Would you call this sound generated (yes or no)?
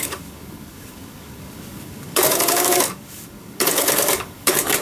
yes